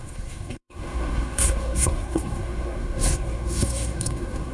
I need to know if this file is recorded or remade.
remade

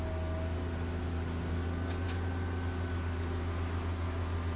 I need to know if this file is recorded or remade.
recorded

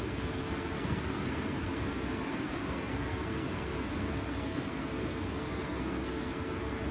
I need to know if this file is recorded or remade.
remade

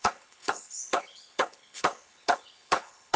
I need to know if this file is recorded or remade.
remade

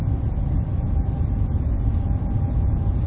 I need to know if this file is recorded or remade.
remade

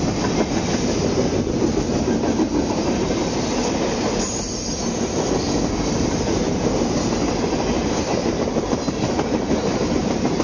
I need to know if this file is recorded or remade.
recorded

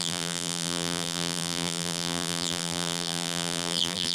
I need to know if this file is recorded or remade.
remade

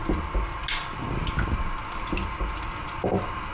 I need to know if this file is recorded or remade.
recorded